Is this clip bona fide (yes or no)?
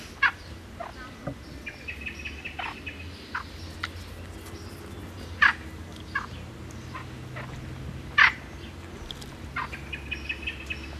yes